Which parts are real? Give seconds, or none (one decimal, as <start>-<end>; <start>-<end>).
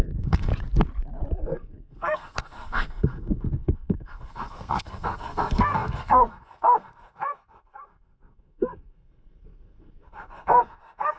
0.5-1.4